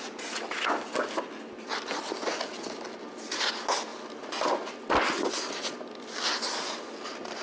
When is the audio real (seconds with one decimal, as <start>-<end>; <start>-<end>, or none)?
0.0-7.4